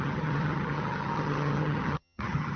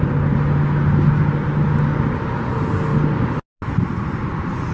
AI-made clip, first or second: first